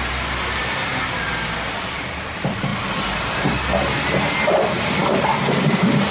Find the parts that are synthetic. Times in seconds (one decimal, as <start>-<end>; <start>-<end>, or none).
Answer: none